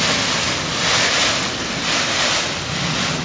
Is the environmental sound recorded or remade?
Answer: recorded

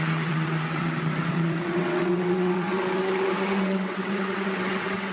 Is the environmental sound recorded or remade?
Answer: remade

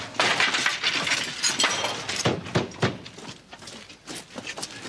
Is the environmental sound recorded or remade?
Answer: recorded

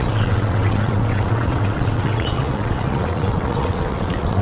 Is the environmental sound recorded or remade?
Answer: remade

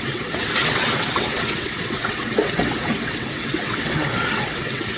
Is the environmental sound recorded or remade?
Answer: remade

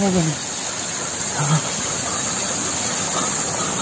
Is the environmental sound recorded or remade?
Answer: recorded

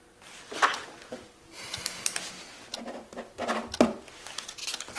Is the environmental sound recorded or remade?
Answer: recorded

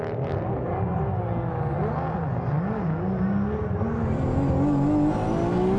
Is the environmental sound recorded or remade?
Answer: recorded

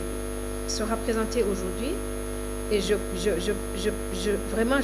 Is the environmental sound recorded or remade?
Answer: recorded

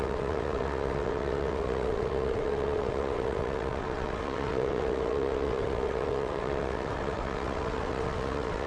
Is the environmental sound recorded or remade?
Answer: remade